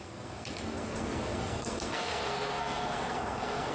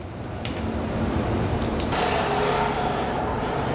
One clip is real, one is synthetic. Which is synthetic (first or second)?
first